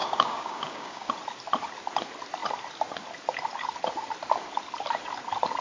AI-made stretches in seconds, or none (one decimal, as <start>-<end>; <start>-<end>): 0.0-1.1